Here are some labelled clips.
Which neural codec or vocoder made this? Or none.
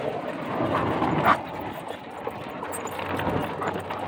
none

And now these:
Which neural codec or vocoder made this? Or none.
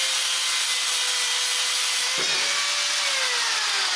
none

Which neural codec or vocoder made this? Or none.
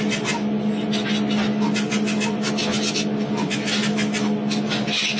none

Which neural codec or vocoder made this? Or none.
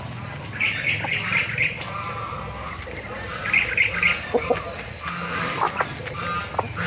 none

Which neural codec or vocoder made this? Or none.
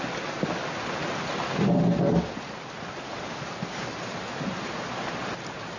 none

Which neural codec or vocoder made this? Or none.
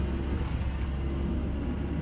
none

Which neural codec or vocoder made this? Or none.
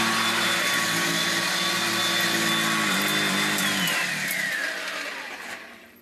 none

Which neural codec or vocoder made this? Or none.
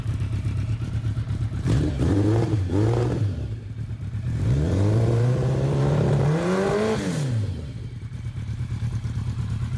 vocoder, BigVGAN v2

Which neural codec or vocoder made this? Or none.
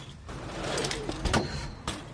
vocoder, BigVGAN v2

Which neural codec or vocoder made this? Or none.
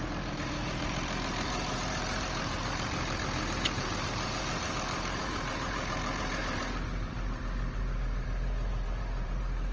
vocoder, BigVGAN v2